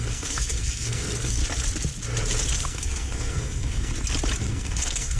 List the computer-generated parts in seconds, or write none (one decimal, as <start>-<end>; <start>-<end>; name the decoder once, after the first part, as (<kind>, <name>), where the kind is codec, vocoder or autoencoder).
0.0-1.4 (codec, SNAC); 2.5-3.9; 4.4-5.2